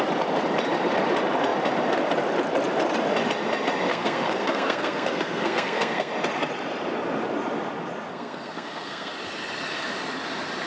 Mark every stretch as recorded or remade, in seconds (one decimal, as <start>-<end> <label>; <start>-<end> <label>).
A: 0.0-3.9 recorded; 3.9-6.1 remade; 6.1-8.1 recorded; 8.1-9.1 remade; 9.1-10.7 recorded

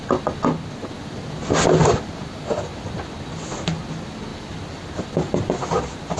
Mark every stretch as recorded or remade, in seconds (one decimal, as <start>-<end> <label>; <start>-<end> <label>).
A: 0.0-1.8 recorded; 1.8-2.4 remade; 2.4-4.3 recorded; 4.3-5.6 remade; 5.6-6.2 recorded

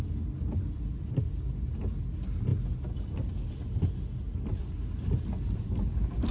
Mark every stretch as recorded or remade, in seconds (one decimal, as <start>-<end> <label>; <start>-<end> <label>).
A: 0.0-6.3 recorded

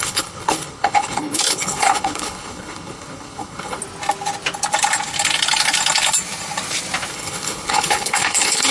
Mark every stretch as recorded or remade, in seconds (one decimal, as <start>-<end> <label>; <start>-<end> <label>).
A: 0.0-3.8 remade; 3.8-7.1 recorded; 7.1-8.7 remade